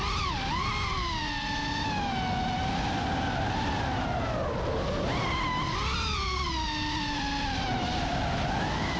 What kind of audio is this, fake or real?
real